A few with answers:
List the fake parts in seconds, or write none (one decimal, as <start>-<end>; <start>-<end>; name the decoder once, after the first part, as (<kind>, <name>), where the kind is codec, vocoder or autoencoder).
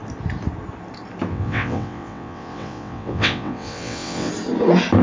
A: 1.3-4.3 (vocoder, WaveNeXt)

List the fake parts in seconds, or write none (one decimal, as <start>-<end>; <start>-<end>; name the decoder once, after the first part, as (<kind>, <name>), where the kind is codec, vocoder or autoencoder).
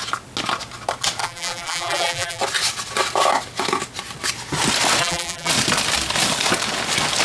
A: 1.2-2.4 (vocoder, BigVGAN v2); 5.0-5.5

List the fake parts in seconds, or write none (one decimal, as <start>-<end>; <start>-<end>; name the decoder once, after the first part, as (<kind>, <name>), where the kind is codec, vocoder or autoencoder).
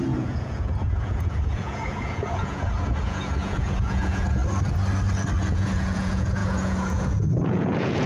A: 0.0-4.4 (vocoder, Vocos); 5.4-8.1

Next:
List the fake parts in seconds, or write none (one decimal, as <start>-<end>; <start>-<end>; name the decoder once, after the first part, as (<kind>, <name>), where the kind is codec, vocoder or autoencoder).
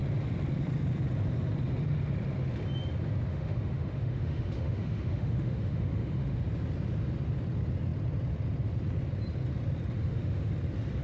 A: 3.3-6.4 (autoencoder, DAC-VAE); 10.0-10.5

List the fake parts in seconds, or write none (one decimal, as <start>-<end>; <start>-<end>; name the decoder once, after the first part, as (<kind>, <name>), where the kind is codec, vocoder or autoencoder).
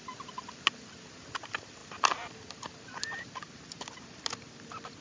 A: none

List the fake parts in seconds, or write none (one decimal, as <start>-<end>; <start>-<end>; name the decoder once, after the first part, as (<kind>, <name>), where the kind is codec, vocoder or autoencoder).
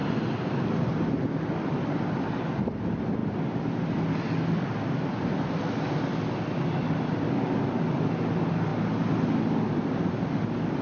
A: none